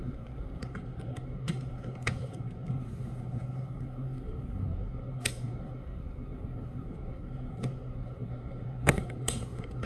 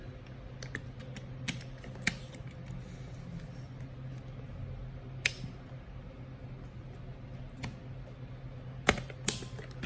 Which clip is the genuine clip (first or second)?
second